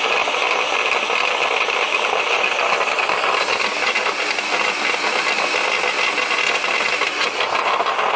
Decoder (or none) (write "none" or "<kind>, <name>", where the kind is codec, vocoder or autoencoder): none